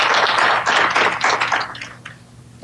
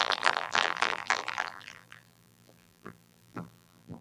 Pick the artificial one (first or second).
second